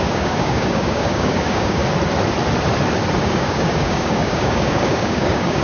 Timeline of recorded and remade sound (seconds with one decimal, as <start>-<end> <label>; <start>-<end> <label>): 0.0-1.8 remade; 1.8-3.2 recorded; 3.2-5.6 remade